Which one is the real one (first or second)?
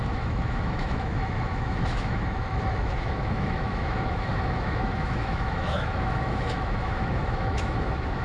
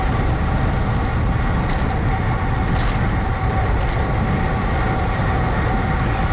second